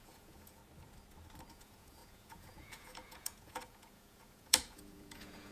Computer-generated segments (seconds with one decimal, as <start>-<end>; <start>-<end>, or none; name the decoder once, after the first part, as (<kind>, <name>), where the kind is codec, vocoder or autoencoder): 0.0-0.6 (vocoder, Vocos); 1.5-5.5